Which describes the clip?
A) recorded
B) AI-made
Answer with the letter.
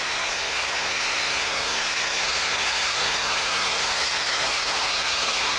B